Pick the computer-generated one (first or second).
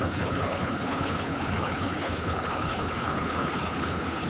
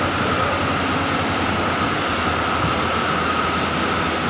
first